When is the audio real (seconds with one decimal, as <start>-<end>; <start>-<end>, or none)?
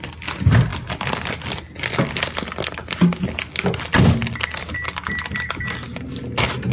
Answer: 0.0-6.7